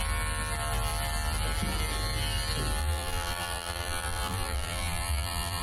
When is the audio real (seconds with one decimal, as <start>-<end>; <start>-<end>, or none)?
0.0-2.8